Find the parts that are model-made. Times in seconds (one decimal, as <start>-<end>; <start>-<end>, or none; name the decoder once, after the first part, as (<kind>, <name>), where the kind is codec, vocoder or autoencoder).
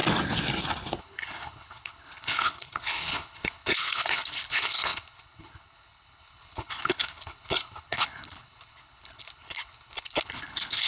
1.0-10.9 (codec, HILCodec)